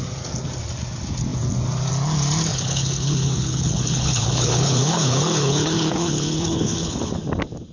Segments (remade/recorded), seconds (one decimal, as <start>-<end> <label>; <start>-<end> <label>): 0.0-2.5 recorded; 2.5-7.1 remade; 7.1-7.7 recorded

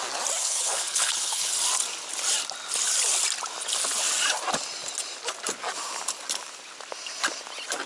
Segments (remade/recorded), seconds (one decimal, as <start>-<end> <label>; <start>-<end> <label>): 0.0-0.4 recorded; 0.4-1.5 remade; 1.5-7.9 recorded

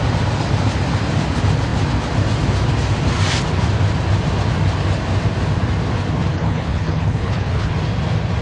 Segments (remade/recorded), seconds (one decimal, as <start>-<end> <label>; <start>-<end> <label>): 0.0-6.3 recorded; 6.3-7.7 remade; 7.7-8.4 recorded

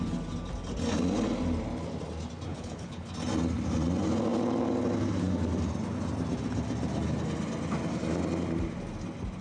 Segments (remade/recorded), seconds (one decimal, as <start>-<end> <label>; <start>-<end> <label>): 0.0-2.5 recorded; 2.5-3.1 remade; 3.1-9.4 recorded